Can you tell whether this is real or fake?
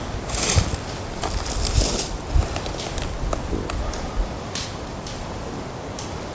real